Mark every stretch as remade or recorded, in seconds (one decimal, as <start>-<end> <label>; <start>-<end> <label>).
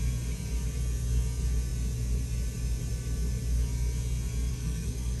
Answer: 0.0-4.5 recorded; 4.5-5.2 remade